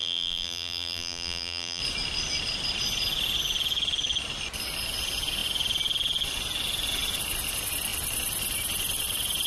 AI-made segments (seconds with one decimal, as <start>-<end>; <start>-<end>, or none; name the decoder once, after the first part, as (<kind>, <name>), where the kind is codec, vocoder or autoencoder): 0.0-1.8 (vocoder, BigVGAN v2)